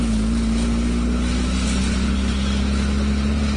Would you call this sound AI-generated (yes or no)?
no